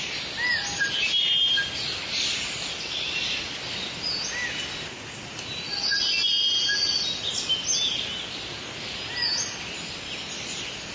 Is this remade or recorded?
recorded